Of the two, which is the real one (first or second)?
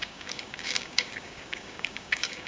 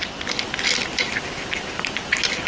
second